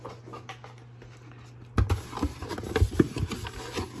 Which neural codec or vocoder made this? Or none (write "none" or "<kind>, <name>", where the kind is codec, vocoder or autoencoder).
none